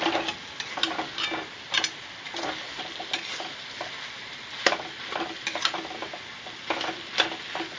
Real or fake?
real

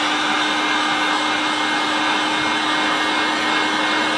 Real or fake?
real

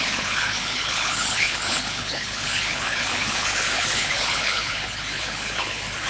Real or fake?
fake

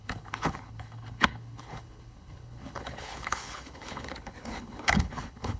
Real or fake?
fake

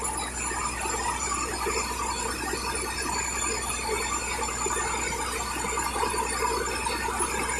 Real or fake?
real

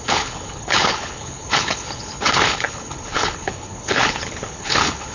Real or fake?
fake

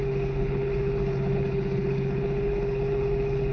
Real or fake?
fake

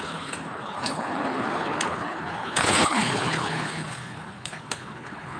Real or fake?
fake